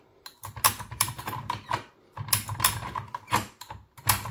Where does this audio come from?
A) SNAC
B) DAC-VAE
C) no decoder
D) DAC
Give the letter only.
C